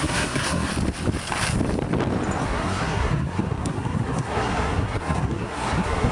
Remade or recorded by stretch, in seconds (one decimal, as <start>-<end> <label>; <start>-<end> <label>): 0.0-0.7 remade; 0.7-2.4 recorded; 2.4-6.1 remade